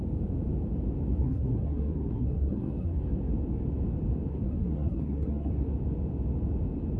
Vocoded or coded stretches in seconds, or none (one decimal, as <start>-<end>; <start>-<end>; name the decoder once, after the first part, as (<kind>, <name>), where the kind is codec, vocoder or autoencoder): 1.2-3.0 (codec, SNAC); 4.3-5.5